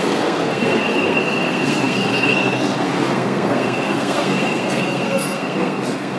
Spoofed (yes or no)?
yes